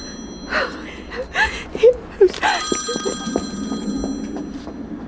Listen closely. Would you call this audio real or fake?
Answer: real